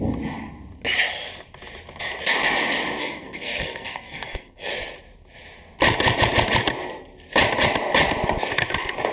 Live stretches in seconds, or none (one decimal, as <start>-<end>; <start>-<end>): 0.0-3.0; 4.7-9.1

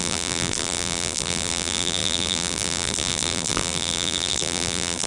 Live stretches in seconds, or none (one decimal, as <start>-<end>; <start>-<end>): none

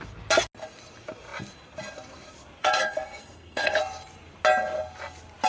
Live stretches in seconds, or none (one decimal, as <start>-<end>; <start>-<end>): 0.0-2.6; 3.8-5.5